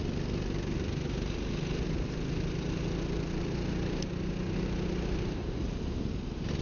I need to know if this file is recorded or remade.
recorded